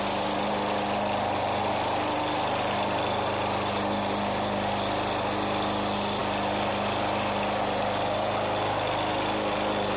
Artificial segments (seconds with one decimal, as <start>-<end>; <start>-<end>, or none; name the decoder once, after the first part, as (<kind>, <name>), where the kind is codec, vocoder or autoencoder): none